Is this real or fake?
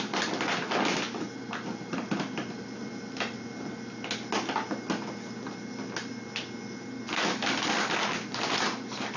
real